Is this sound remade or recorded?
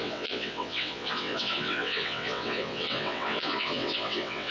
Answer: remade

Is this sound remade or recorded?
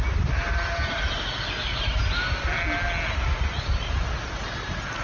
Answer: recorded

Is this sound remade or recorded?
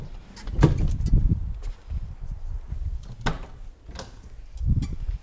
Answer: recorded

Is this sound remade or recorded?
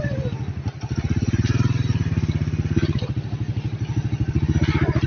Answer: recorded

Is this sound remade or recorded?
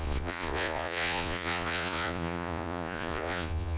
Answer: remade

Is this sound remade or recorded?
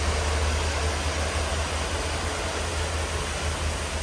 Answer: recorded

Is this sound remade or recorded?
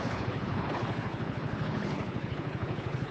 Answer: remade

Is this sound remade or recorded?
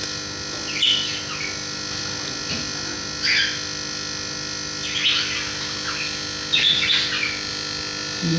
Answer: recorded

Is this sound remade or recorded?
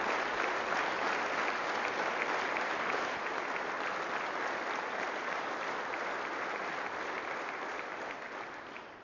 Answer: recorded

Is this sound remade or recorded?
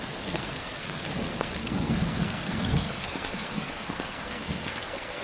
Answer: remade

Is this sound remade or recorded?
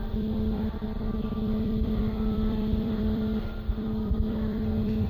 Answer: remade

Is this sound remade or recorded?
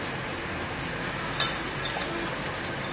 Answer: recorded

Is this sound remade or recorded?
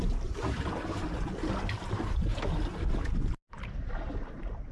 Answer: recorded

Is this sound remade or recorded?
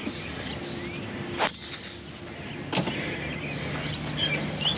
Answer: recorded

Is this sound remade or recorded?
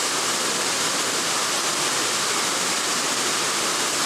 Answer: recorded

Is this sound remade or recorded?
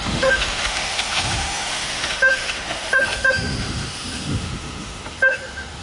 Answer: remade